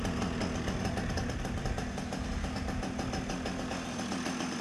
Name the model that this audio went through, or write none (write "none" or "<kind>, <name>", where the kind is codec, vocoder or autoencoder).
none